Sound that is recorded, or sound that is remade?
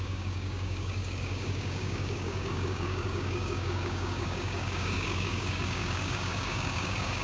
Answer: remade